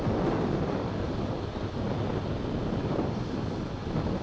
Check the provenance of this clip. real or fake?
real